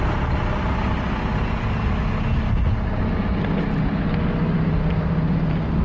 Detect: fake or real real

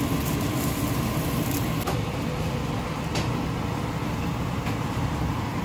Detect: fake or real real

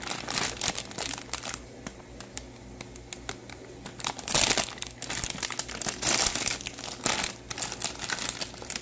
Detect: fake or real real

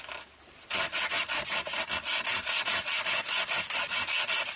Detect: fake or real fake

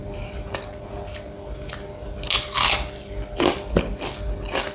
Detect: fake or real real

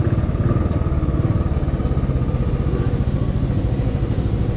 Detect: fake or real real